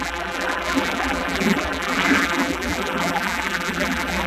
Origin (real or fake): fake